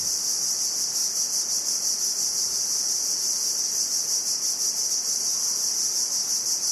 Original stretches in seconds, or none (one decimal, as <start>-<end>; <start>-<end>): 0.0-6.7